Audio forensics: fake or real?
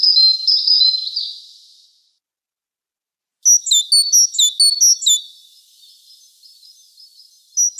real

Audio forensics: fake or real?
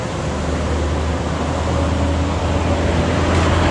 real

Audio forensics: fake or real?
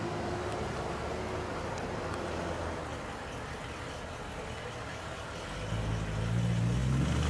real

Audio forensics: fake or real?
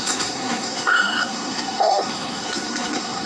fake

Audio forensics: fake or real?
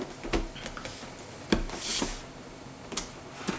real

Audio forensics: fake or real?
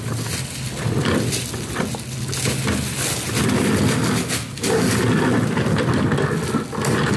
real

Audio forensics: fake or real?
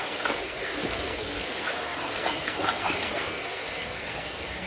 fake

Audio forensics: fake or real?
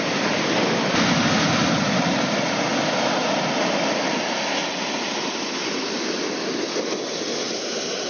real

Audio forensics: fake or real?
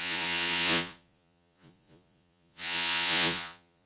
fake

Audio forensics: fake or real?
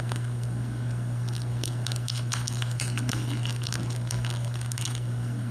fake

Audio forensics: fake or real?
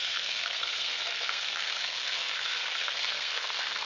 fake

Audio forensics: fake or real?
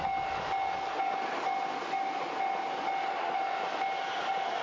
real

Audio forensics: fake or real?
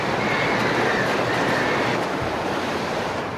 real